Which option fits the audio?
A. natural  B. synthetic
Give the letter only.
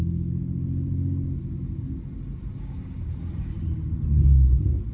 A